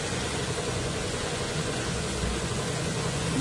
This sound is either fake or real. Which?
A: fake